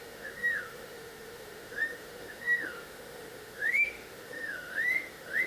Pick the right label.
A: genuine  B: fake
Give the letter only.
B